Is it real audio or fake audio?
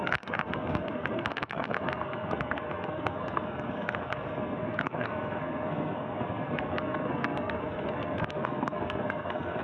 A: fake